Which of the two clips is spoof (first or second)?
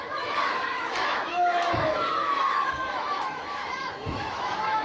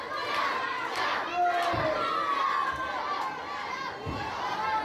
first